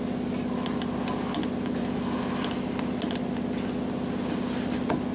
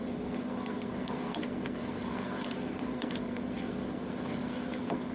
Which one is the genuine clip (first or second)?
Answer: first